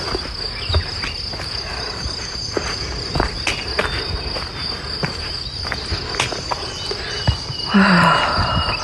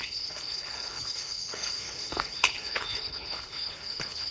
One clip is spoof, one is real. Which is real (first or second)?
first